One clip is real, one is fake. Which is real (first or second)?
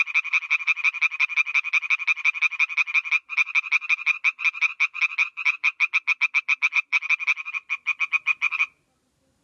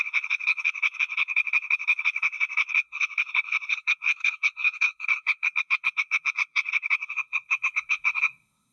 first